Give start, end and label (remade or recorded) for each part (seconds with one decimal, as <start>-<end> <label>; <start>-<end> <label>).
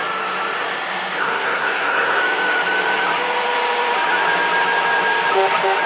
0.0-1.2 recorded; 1.2-2.2 remade; 2.2-5.9 recorded